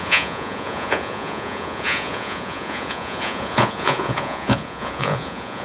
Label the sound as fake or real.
fake